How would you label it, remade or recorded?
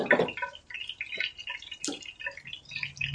recorded